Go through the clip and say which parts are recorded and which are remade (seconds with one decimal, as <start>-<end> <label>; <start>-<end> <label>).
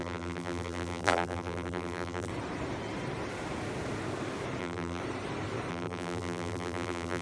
0.0-2.3 remade; 2.3-4.6 recorded; 4.6-5.0 remade; 5.0-5.7 recorded; 5.7-7.2 remade